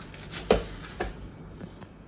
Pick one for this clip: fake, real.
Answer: real